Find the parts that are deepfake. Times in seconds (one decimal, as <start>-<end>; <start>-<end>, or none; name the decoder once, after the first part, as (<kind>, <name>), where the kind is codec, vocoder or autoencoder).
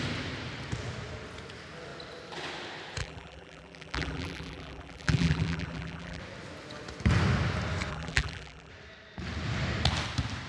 3.0-6.2 (vocoder, BigVGAN v2); 7.9-8.7